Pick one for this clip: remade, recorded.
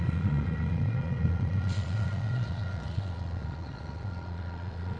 remade